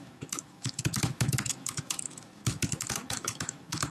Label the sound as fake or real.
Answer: fake